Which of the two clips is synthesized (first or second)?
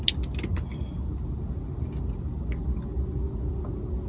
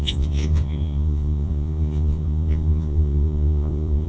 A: second